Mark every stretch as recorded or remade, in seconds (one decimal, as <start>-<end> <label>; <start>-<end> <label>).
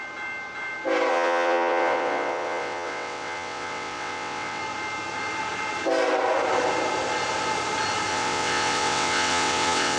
0.0-1.1 recorded; 1.1-4.6 remade; 4.6-8.1 recorded; 8.1-10.0 remade